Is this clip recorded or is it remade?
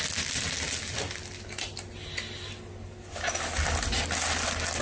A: recorded